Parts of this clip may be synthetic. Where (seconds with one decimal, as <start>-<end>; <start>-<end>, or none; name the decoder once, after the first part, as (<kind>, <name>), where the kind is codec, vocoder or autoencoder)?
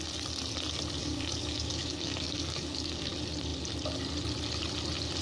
1.0-3.1 (codec, DAC)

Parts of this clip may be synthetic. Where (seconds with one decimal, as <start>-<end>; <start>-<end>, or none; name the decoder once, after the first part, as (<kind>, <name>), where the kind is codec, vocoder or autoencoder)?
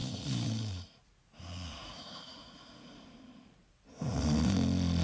0.0-3.0 (vocoder, Vocos)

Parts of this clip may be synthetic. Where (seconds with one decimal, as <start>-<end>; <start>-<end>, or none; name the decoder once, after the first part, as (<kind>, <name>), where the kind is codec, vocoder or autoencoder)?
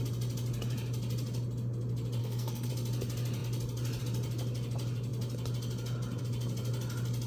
2.2-2.7 (codec, SNAC)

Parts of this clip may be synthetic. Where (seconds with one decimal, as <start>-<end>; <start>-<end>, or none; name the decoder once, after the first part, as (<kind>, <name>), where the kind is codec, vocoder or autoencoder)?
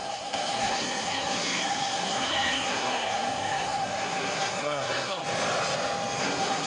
0.0-5.2 (codec, SNAC); 6.2-6.7